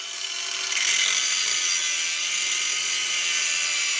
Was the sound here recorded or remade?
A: recorded